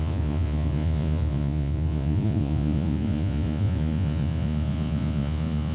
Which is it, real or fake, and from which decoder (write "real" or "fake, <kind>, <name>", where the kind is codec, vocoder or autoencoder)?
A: fake, vocoder, Vocos